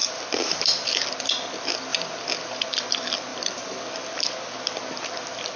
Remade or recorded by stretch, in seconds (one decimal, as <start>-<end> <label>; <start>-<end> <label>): 0.0-0.6 remade; 0.6-3.3 recorded; 3.3-3.8 remade; 3.8-5.6 recorded